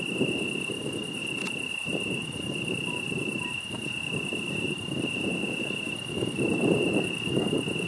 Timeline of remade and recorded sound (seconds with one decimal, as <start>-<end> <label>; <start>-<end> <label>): 0.0-1.2 remade; 1.2-1.7 recorded; 1.7-7.9 remade